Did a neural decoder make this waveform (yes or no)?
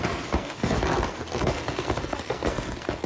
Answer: yes